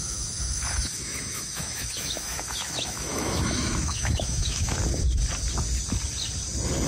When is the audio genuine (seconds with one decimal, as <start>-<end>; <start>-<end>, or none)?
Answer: 4.8-6.9